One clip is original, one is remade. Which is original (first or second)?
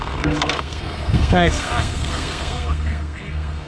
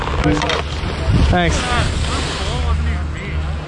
second